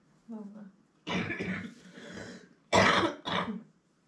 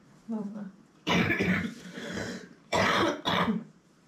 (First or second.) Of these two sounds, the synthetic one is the second